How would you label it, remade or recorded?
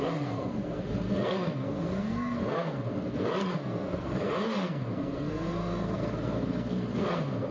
remade